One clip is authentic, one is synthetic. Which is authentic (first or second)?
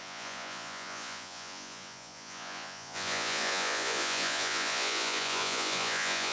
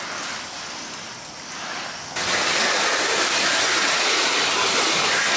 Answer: second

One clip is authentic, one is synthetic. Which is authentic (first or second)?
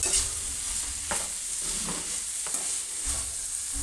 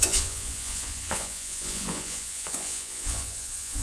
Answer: first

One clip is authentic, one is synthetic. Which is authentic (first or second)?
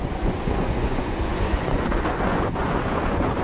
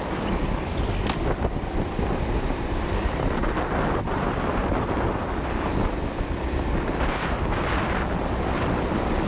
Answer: second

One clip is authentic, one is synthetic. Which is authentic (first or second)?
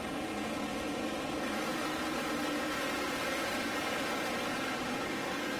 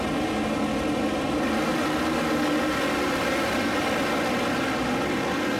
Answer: second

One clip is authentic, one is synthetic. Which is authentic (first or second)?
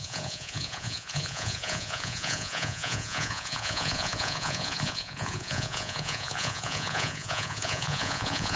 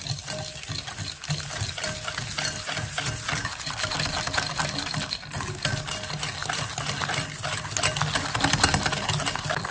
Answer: second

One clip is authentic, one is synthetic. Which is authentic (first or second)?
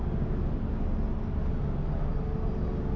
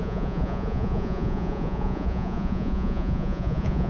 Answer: first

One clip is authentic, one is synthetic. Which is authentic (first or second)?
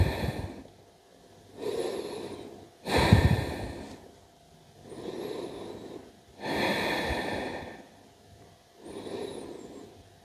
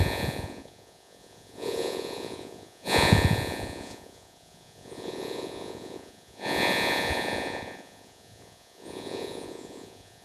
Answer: first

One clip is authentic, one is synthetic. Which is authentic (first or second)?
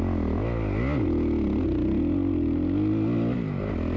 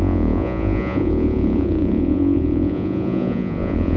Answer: first